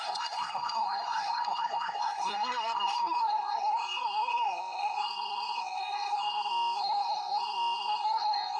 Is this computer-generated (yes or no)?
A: yes